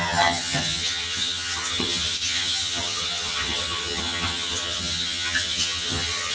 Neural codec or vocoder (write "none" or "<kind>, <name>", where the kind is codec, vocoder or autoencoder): vocoder, HiFi-GAN